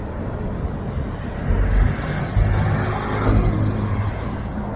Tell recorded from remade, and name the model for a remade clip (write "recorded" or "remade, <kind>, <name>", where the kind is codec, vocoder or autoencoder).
recorded